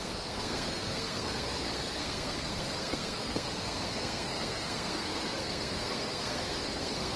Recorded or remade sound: remade